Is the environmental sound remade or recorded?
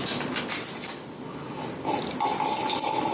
recorded